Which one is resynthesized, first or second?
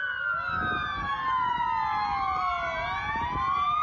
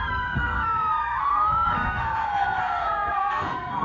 second